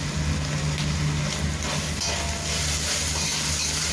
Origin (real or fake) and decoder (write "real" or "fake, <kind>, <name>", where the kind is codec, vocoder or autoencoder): real